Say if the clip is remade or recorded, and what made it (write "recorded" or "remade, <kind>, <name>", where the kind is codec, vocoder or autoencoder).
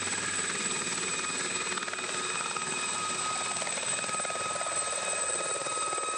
recorded